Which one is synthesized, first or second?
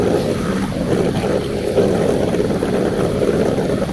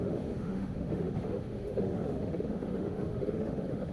second